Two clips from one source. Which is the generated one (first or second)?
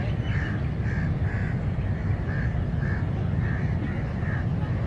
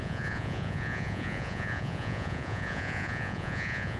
second